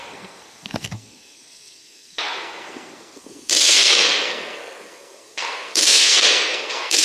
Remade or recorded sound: remade